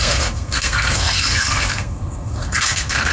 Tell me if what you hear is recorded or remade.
remade